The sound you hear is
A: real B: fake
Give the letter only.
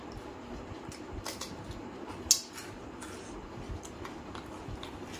A